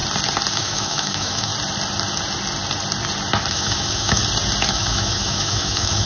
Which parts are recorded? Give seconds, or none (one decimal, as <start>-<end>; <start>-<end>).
0.0-0.5; 1.5-3.5; 4.2-4.7

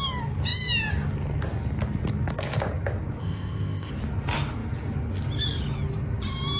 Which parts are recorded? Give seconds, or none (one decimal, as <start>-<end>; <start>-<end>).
0.0-3.2; 3.9-6.6

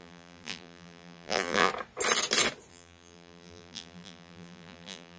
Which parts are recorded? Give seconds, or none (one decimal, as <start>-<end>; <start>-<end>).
1.7-2.7

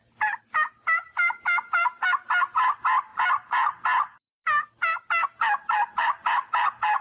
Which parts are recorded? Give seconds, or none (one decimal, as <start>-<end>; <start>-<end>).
0.0-7.0

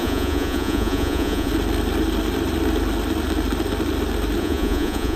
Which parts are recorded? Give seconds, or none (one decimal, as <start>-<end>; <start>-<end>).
1.5-4.4

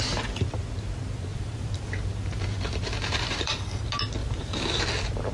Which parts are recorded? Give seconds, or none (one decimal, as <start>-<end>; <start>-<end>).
0.0-1.3; 3.8-4.2; 4.8-5.3

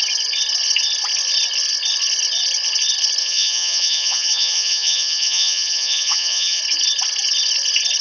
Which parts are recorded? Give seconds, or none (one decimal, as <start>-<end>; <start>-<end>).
0.0-3.2; 6.6-8.0

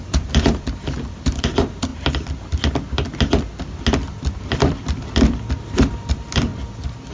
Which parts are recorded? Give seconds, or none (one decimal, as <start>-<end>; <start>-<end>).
1.9-5.7; 6.5-7.1